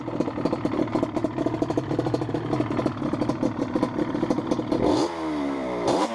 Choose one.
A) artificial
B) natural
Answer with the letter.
A